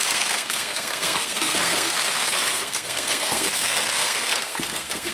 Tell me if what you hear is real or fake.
fake